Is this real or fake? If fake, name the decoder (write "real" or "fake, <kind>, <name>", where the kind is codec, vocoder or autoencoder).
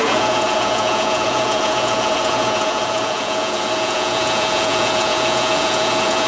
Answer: fake, vocoder, Vocos